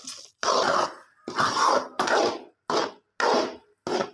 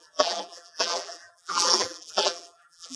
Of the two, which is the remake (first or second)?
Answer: second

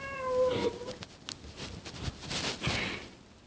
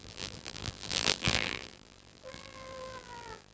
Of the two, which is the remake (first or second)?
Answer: second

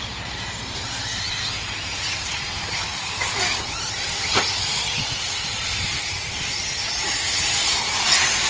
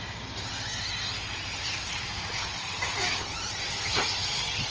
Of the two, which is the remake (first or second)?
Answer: first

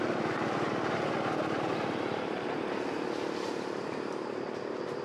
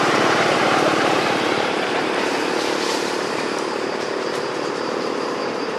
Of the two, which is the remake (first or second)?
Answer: second